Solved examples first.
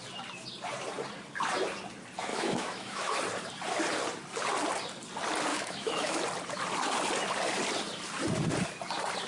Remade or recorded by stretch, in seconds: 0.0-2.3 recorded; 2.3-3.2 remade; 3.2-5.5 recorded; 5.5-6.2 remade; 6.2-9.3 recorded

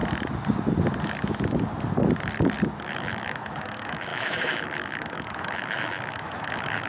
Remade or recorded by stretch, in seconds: 0.0-2.8 recorded; 2.8-6.9 remade

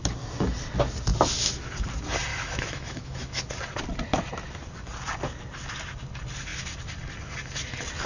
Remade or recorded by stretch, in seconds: 0.0-2.3 recorded; 2.3-3.4 remade; 3.4-8.1 recorded

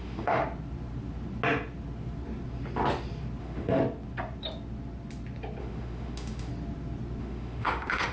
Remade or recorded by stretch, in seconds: 0.0-0.4 remade; 0.4-3.4 recorded; 3.4-3.8 remade; 3.8-5.6 recorded; 5.6-6.5 remade; 6.5-7.2 recorded; 7.2-8.1 remade

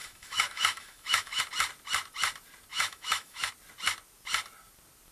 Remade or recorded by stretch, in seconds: 0.0-1.4 remade; 1.4-2.7 recorded; 2.7-3.5 remade; 3.5-5.1 recorded

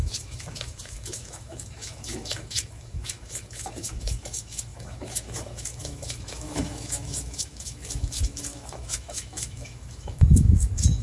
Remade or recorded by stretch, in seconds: 0.0-11.0 remade

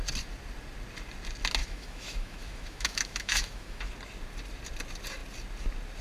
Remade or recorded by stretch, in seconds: 0.0-1.6 recorded; 1.6-3.8 remade; 3.8-6.0 recorded

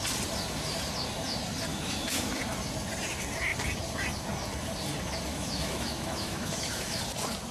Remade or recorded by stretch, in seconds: 0.0-1.7 recorded; 1.7-2.3 remade; 2.3-5.3 recorded; 5.3-7.0 remade; 7.0-7.5 recorded